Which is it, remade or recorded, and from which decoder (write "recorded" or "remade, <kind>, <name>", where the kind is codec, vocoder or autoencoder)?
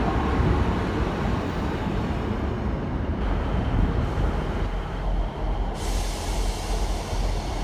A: recorded